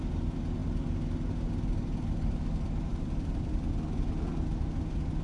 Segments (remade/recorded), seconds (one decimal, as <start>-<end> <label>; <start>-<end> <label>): 0.0-2.9 recorded; 2.9-3.5 remade; 3.5-5.2 recorded